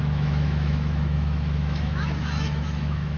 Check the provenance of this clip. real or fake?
fake